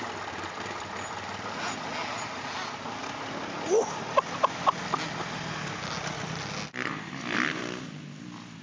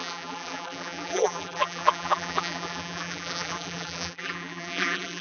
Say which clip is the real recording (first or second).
first